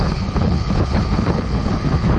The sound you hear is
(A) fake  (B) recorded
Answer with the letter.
A